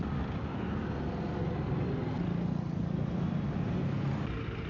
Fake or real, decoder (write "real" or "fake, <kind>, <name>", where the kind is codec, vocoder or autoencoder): real